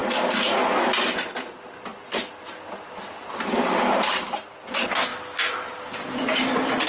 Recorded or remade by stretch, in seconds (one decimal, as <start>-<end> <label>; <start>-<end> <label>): 0.0-6.9 recorded